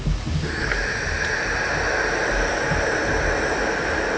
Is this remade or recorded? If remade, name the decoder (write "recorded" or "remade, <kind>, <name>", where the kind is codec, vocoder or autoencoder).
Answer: recorded